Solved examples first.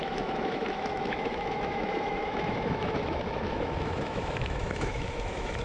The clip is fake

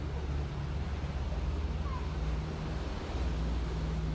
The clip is real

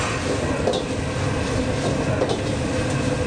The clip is real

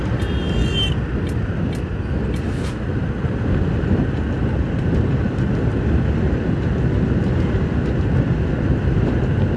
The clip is real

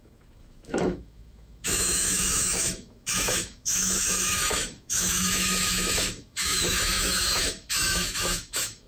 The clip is fake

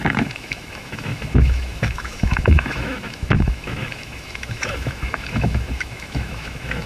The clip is fake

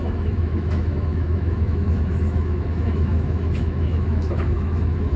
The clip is fake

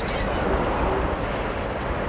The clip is real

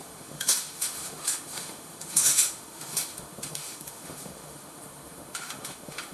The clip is fake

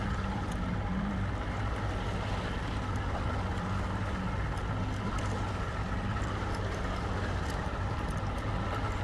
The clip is real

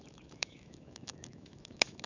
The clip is fake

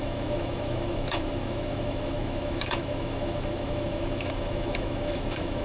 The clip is fake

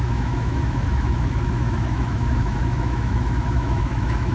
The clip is fake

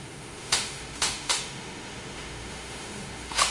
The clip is fake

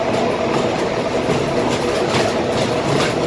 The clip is real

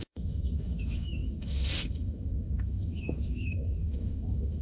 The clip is fake